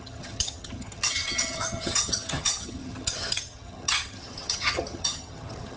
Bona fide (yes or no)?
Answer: no